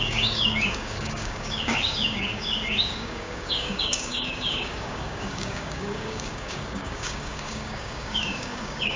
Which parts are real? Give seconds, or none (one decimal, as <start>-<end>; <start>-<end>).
none